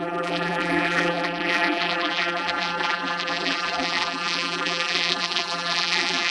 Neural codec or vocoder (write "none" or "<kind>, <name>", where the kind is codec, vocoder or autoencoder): vocoder, BigVGAN v2